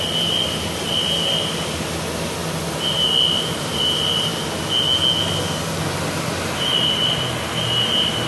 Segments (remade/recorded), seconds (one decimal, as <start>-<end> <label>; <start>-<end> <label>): 0.0-2.4 remade; 2.4-3.6 recorded; 3.6-4.3 remade; 4.3-5.8 recorded; 5.8-8.3 remade